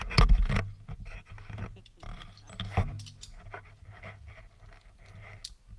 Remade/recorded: recorded